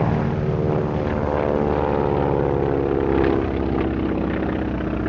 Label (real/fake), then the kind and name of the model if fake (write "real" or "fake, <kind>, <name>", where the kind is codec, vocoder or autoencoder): real